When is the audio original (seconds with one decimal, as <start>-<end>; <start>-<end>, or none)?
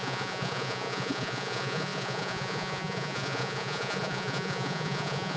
none